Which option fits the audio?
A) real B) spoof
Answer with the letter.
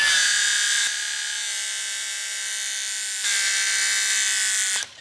A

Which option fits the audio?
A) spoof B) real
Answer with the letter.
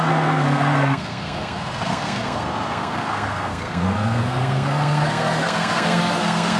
A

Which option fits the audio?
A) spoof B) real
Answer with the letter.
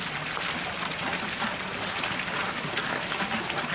B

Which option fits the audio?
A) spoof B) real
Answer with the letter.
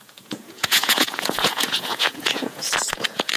A